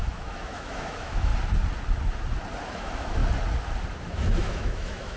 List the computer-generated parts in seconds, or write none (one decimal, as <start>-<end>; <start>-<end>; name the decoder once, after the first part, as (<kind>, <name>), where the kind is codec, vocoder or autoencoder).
0.0-1.3 (autoencoder, DAC-VAE); 2.6-3.2; 4.0-5.2